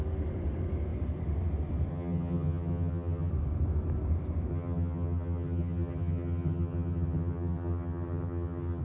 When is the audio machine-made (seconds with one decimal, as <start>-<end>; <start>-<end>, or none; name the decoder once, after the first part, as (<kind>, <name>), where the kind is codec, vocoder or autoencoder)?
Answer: 1.9-3.3 (vocoder, HiFi-GAN); 4.5-8.8